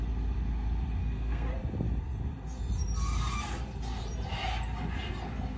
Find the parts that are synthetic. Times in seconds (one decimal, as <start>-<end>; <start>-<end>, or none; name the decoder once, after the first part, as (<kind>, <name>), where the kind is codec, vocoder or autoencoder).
1.0-1.5 (codec, SNAC)

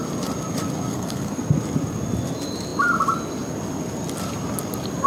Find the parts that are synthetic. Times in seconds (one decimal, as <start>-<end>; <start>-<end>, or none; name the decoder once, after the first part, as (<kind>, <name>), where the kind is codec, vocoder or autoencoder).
0.9-1.4 (codec, SNAC)

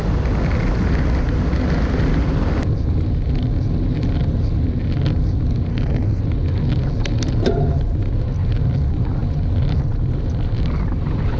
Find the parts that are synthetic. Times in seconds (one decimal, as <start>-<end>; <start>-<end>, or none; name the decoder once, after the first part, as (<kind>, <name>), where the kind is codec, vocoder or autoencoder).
5.7-6.2 (codec, SNAC)